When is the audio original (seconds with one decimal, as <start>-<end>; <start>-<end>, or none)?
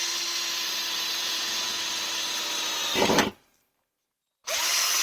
0.0-1.2; 1.8-5.0